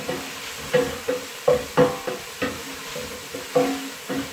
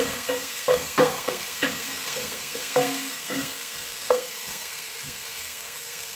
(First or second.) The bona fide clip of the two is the first